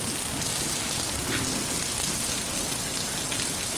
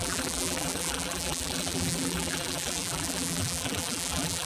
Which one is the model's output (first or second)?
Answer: second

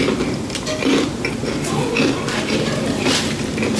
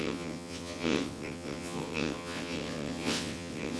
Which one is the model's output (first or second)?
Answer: second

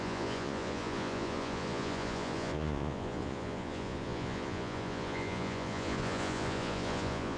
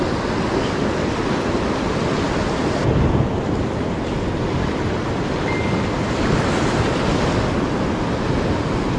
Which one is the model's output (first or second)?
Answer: first